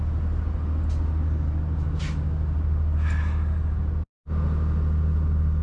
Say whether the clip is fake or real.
real